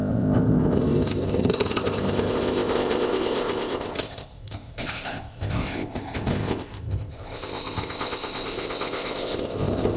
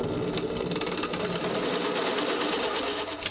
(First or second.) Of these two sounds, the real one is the second